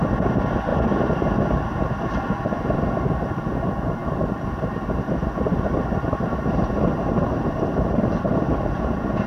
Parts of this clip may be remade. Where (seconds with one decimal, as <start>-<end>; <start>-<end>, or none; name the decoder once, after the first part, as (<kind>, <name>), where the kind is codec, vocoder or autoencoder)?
0.7-1.2 (vocoder, BigVGAN v2); 4.0-8.3